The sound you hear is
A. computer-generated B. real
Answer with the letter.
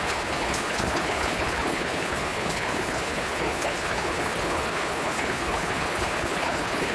A